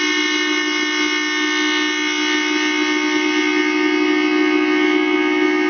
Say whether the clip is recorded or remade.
recorded